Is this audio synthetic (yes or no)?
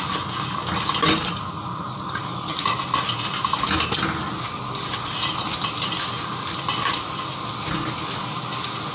no